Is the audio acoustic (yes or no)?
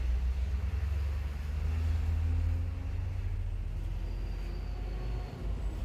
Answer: yes